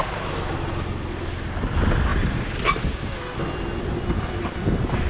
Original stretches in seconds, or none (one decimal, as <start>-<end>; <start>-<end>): 0.0-2.1; 2.6-5.1